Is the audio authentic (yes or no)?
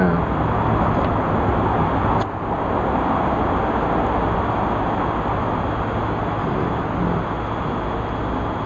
yes